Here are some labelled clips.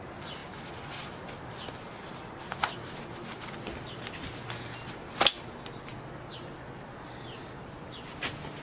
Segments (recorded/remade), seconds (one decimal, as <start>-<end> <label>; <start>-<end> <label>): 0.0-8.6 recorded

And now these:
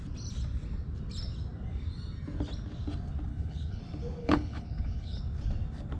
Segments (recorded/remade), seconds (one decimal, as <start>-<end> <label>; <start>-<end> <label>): 0.0-3.3 recorded; 3.3-3.8 remade; 3.8-4.2 recorded; 4.2-5.2 remade; 5.2-6.0 recorded

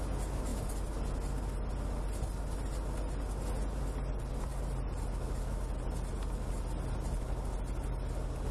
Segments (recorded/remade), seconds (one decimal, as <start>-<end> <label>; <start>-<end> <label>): 0.0-8.5 recorded

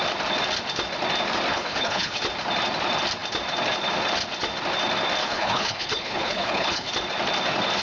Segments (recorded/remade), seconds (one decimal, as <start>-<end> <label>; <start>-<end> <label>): 0.0-1.5 recorded; 1.5-2.2 remade; 2.2-5.2 recorded; 5.2-6.9 remade; 6.9-7.8 recorded

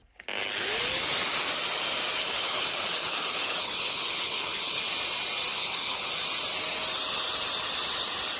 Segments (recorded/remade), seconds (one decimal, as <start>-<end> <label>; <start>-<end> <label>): 0.0-2.2 recorded; 2.2-4.8 remade; 4.8-5.5 recorded; 5.5-6.1 remade; 6.1-8.4 recorded